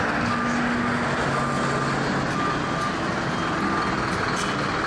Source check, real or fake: real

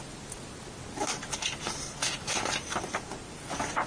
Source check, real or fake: real